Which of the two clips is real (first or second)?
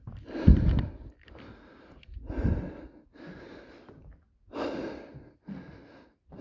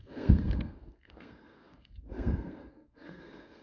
first